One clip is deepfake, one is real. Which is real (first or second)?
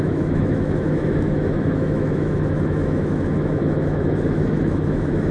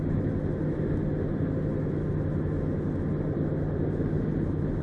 second